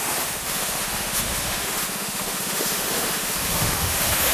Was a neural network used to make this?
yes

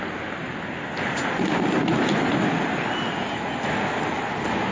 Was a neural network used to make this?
no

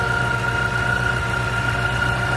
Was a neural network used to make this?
no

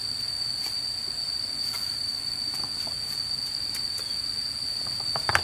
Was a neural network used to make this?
no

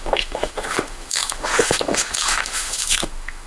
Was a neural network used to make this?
yes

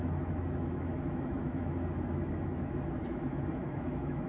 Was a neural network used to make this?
yes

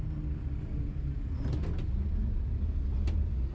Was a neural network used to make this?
no